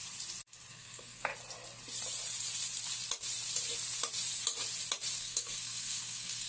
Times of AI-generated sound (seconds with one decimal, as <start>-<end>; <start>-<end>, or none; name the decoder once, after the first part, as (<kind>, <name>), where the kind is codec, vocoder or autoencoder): 0.7-1.3 (codec, SNAC); 5.2-6.5